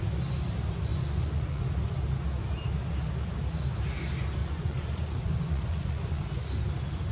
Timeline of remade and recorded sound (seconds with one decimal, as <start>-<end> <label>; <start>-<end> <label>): 0.0-0.9 recorded; 0.9-1.7 remade; 1.7-4.4 recorded; 4.4-6.2 remade; 6.2-7.1 recorded